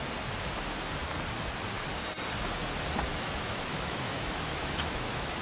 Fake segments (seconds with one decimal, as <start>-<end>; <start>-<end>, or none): 3.1-5.4